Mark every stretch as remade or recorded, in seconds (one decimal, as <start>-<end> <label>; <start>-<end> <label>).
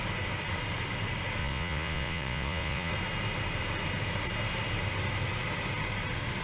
0.0-1.4 recorded; 1.4-2.9 remade; 2.9-6.4 recorded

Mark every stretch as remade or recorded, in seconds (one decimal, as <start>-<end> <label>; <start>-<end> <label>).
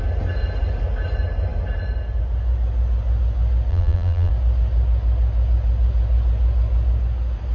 0.0-3.7 recorded; 3.7-4.3 remade; 4.3-7.5 recorded